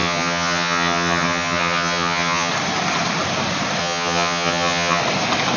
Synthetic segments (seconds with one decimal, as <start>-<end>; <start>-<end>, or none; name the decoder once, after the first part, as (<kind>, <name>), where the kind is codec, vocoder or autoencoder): 0.0-2.5 (vocoder, HiFi-GAN); 3.8-5.0